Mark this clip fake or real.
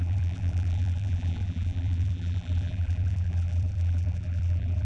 fake